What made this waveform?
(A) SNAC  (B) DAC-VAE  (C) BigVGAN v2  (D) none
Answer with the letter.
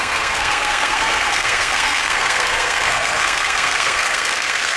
A